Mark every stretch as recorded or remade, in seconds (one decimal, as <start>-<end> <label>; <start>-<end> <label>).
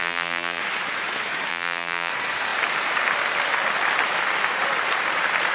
0.0-0.6 remade; 0.6-1.5 recorded; 1.5-2.1 remade; 2.1-5.5 recorded